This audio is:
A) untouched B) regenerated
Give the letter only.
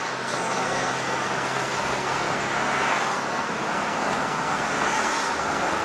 B